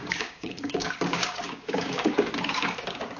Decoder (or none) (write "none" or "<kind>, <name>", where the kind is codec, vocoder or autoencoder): codec, DAC